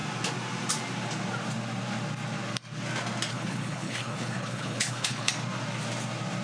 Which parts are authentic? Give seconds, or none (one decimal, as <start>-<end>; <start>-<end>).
0.0-3.3; 5.3-6.4

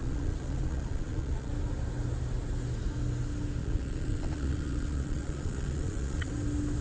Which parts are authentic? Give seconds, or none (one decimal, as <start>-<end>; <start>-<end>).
1.5-3.6; 6.3-6.8

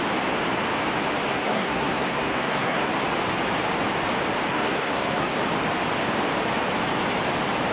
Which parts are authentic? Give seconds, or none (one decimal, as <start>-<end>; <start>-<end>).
0.0-1.3; 2.9-4.5; 5.4-7.7

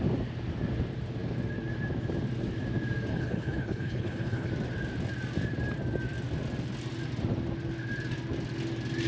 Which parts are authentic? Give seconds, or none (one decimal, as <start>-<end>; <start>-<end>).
0.0-3.1; 4.5-9.1

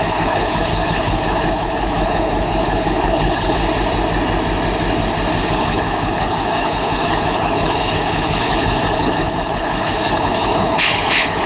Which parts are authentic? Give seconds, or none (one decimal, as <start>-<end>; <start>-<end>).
3.6-5.4

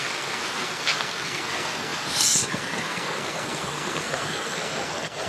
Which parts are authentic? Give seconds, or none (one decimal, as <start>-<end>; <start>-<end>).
none

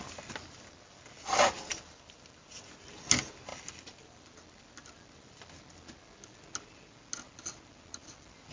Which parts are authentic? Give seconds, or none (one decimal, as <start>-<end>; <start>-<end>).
0.0-1.7; 2.6-3.5; 6.5-8.0

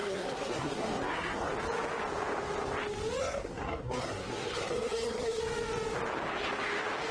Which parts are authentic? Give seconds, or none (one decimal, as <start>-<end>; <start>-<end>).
1.5-3.2; 5.4-7.1